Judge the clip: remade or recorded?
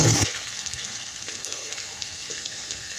remade